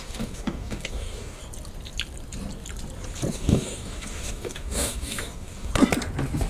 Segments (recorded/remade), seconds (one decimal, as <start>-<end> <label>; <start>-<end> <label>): 0.0-1.4 remade; 1.4-3.3 recorded; 3.3-5.7 remade; 5.7-6.5 recorded